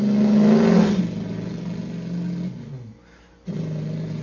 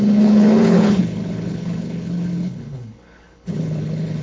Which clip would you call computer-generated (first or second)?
second